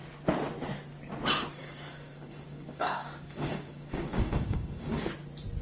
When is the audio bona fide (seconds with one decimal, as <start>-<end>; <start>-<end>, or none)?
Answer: 0.0-1.6; 5.0-5.6